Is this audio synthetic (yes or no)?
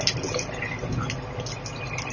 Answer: no